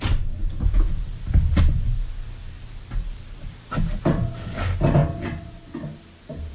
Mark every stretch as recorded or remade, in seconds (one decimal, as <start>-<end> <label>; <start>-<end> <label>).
0.0-6.5 recorded